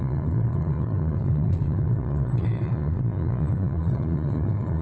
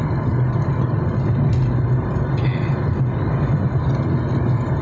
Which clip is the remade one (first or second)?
first